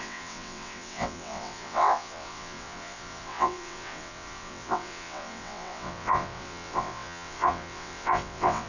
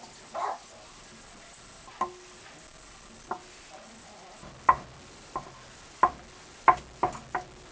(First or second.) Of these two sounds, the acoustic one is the second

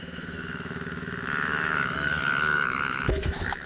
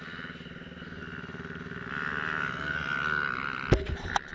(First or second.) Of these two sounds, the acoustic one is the second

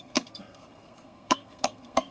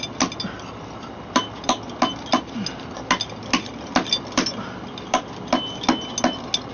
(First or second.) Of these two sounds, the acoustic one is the second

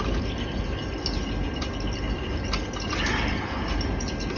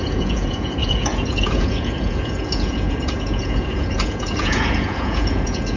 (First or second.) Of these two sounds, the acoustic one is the first